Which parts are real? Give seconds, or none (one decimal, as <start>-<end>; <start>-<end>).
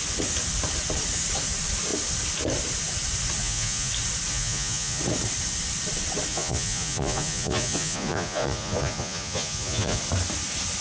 0.0-3.4; 3.9-4.3; 5.0-6.3; 10.0-10.8